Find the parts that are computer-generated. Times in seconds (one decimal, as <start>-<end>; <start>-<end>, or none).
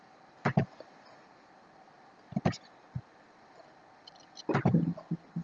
none